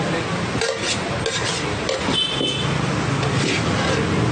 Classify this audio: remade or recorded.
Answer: recorded